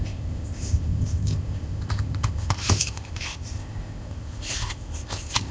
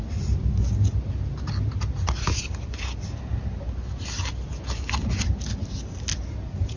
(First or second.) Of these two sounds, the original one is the second